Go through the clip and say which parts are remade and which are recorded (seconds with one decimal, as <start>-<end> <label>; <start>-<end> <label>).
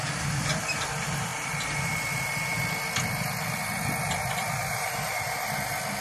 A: 0.0-4.7 recorded; 4.7-5.6 remade; 5.6-6.0 recorded